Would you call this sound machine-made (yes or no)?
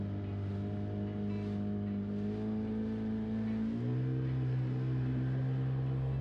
no